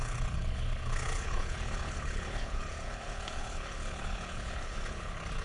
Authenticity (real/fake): fake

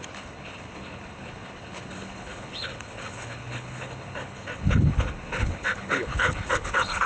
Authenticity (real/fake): fake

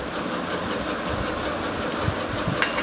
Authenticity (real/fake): real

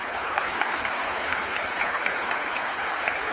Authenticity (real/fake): fake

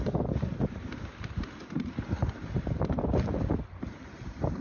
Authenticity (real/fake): real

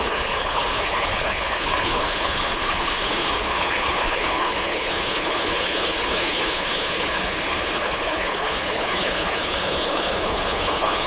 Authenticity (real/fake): fake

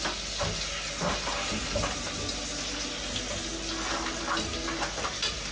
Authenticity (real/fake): real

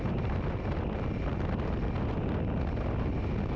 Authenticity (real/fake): real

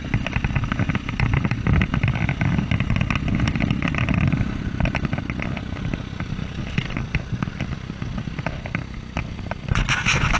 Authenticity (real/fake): real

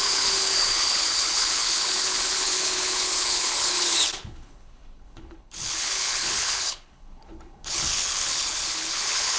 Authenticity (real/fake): fake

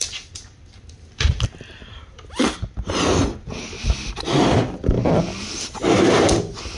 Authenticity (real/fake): real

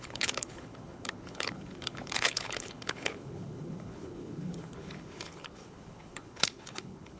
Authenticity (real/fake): fake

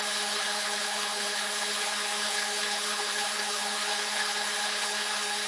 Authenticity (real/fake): fake